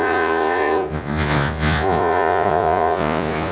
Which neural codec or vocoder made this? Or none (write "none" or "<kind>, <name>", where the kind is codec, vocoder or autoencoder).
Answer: vocoder, Vocos